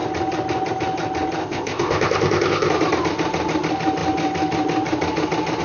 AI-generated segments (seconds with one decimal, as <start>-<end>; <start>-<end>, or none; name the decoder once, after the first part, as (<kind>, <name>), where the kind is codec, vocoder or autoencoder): 1.4-2.7 (codec, ZipCodec)